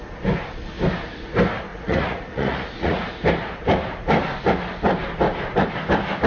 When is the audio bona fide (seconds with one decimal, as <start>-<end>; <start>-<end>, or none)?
0.0-1.7; 3.1-6.3